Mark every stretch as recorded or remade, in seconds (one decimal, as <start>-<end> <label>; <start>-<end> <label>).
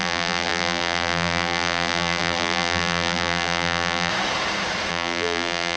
0.0-4.1 remade; 4.1-4.9 recorded; 4.9-5.8 remade